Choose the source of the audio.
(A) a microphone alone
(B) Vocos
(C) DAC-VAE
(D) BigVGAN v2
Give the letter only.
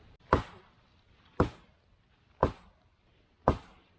A